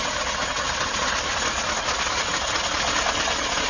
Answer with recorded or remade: recorded